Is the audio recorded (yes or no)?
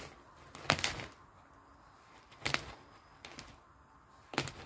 yes